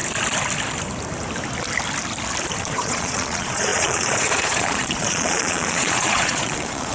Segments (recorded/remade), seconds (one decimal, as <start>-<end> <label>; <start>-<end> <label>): 0.0-2.6 recorded; 2.6-6.9 remade